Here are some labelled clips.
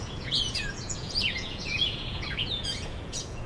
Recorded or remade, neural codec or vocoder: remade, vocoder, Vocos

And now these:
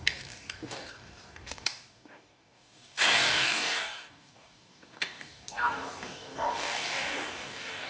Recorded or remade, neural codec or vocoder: remade, codec, DAC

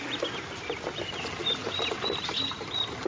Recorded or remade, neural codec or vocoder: recorded